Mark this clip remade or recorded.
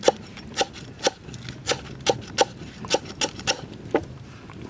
recorded